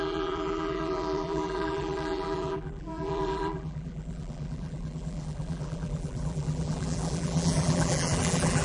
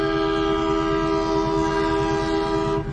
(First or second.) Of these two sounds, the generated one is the first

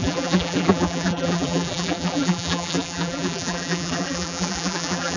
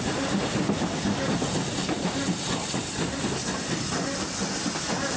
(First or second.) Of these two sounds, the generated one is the first